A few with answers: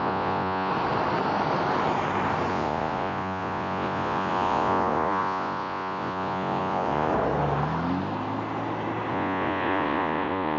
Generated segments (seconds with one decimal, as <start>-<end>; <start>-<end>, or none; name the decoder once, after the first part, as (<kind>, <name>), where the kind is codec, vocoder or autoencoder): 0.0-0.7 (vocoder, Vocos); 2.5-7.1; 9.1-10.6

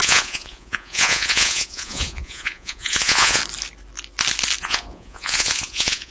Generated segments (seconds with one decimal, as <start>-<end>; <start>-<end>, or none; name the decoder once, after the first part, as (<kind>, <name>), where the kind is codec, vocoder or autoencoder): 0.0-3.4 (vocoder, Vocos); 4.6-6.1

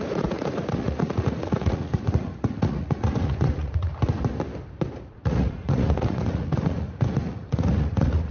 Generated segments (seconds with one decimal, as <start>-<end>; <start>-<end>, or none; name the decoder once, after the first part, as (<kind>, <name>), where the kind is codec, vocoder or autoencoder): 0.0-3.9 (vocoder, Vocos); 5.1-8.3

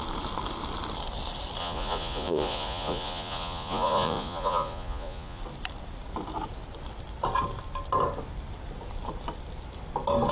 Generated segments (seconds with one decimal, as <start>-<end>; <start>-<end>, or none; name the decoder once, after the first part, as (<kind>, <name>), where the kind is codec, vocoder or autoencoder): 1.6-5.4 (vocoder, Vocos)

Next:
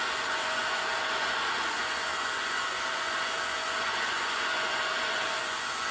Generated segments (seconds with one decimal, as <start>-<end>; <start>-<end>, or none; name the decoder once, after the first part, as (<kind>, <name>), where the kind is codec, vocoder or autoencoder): 0.0-5.9 (vocoder, Vocos)

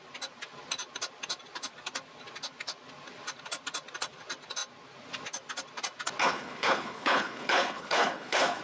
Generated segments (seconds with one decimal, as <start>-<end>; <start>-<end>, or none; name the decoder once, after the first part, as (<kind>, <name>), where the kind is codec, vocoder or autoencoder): 6.2-8.6 (codec, HILCodec)

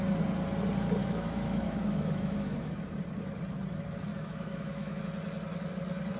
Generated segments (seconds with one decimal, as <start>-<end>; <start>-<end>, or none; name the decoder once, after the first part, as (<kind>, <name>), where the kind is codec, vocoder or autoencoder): 1.0-2.7 (autoencoder, DAC-VAE); 4.1-5.0